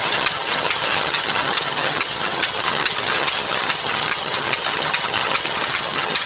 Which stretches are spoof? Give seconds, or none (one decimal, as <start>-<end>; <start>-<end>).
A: 0.0-6.3